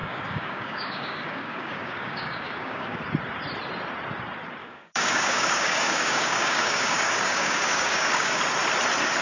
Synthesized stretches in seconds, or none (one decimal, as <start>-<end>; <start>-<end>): 0.0-3.0; 4.6-8.4